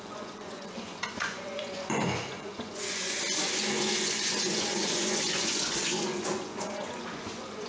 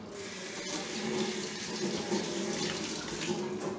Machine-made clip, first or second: first